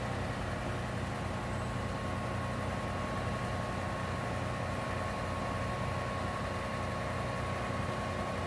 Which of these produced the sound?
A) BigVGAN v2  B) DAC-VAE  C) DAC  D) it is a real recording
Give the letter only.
D